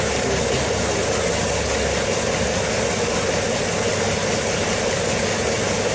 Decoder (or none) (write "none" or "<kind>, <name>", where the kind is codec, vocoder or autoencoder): none